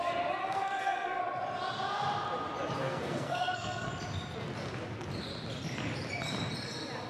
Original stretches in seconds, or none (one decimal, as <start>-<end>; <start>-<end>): 0.0-0.4; 1.2-2.8; 3.9-7.1

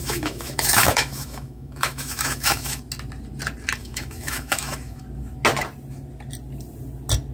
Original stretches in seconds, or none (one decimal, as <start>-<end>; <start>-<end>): 2.8-3.8; 5.0-7.3

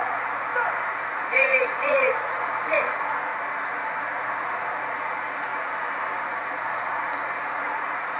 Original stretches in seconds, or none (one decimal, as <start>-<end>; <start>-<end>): 0.5-1.1; 3.3-4.0; 5.5-6.4

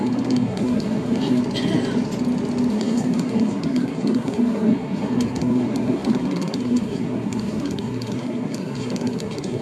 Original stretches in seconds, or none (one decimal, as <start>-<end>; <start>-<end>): 1.4-2.7

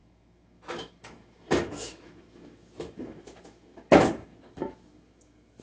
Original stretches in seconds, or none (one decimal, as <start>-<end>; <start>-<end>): none

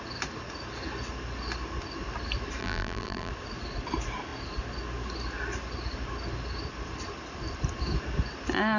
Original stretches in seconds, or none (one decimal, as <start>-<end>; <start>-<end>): 0.0-2.6; 3.3-8.8

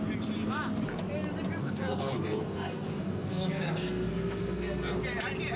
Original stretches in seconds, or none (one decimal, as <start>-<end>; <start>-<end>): 0.0-1.6; 5.0-5.6

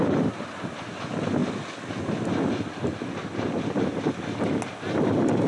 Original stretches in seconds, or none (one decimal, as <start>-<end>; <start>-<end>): 0.0-5.5